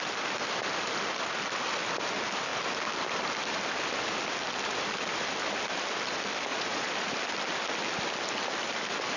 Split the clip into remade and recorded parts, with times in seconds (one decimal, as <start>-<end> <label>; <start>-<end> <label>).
0.0-6.5 recorded; 6.5-7.1 remade; 7.1-9.2 recorded